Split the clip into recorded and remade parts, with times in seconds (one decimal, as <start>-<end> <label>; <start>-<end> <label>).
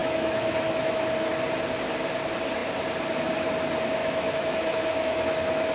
0.0-1.3 remade; 1.3-4.0 recorded; 4.0-5.7 remade